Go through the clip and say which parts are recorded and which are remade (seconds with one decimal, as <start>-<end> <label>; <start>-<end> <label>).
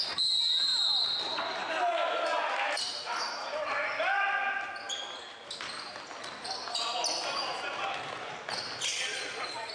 0.0-8.9 recorded; 8.9-9.7 remade